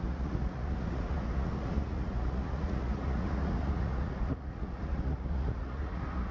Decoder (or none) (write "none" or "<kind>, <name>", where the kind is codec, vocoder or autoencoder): vocoder, Vocos